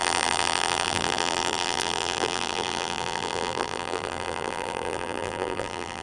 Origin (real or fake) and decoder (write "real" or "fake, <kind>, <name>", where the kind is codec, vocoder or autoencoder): fake, vocoder, BigVGAN v2